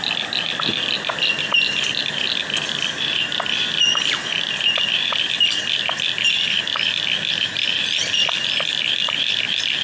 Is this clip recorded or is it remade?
recorded